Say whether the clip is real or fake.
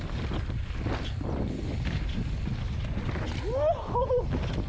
real